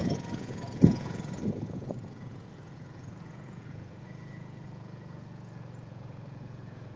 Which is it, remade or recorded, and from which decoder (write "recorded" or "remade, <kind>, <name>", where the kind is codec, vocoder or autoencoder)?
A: remade, vocoder, Vocos